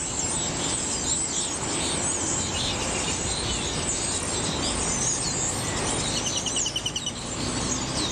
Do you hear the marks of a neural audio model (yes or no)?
no